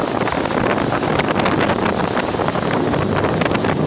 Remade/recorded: recorded